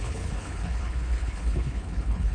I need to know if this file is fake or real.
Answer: fake